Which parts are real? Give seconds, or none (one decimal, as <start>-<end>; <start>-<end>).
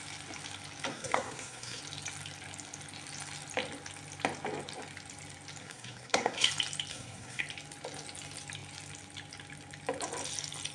0.0-0.9; 1.8-5.6; 6.5-6.9; 7.4-10.7